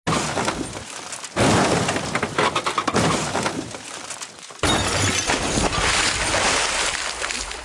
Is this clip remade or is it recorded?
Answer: recorded